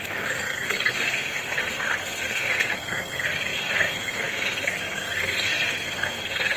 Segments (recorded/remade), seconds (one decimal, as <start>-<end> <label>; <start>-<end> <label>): 0.0-6.6 remade